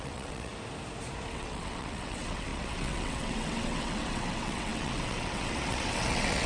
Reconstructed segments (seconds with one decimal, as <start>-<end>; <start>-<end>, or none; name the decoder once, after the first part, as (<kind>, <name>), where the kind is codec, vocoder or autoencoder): 0.0-0.5 (vocoder, WaveNeXt); 1.3-6.5